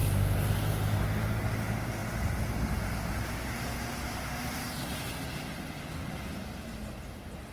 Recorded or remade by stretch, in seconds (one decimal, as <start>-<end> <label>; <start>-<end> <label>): 0.0-7.5 recorded